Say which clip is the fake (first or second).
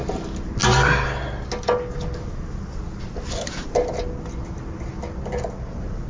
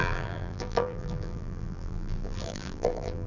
second